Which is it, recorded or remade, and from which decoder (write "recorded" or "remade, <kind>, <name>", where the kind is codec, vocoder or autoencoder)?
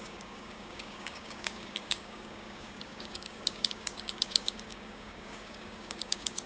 remade, codec, DAC